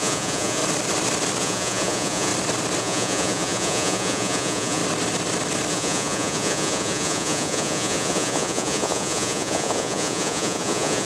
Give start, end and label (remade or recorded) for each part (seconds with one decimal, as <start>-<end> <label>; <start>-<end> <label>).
0.0-0.6 remade; 0.6-1.4 recorded; 1.4-2.3 remade; 2.3-2.8 recorded; 2.8-4.8 remade; 4.8-5.7 recorded; 5.7-11.0 remade